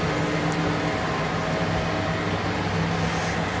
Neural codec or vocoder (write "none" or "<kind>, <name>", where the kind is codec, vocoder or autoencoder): none